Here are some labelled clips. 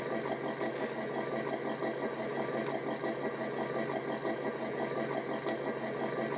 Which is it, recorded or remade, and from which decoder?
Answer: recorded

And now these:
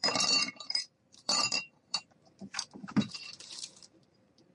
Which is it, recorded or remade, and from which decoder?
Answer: remade, vocoder, BigVGAN v2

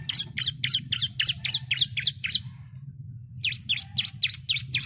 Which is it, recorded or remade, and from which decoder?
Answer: remade, vocoder, BigVGAN v2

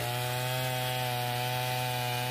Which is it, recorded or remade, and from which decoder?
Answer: recorded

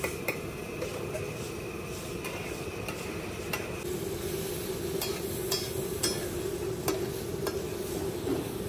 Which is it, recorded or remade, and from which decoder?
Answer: recorded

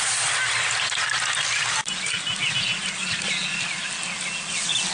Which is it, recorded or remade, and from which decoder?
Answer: recorded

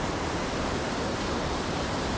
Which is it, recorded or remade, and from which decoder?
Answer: remade, vocoder, BigVGAN v2